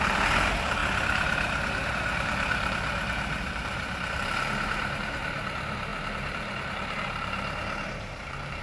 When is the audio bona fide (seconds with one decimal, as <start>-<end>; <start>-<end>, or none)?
none